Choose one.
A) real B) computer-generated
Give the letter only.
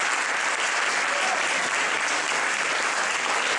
A